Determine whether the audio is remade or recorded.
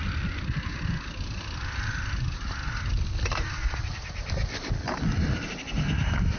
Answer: recorded